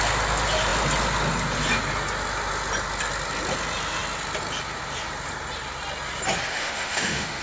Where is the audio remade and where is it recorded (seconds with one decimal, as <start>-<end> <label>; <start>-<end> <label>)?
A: 0.0-6.5 recorded; 6.5-7.4 remade